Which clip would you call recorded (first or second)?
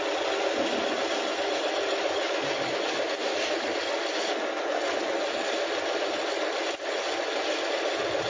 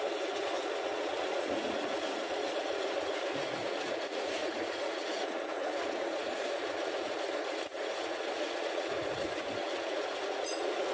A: first